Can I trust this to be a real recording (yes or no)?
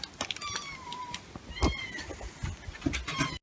yes